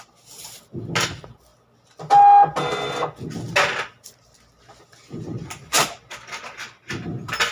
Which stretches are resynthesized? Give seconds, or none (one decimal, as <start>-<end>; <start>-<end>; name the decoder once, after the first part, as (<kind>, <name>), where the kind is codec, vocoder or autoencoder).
none